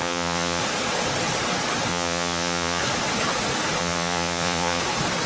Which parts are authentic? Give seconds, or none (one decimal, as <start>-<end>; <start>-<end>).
0.6-1.9; 2.8-3.8; 4.8-5.3